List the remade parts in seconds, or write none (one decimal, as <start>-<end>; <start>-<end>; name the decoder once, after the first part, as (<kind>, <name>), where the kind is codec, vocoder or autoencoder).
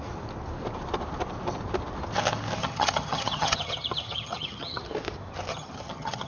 2.6-4.8 (vocoder, HiFi-GAN); 5.5-6.3